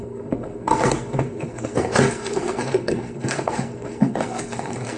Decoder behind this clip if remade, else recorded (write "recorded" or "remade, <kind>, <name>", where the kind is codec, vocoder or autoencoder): remade, codec, SNAC